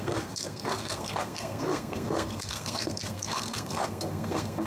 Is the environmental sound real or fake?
fake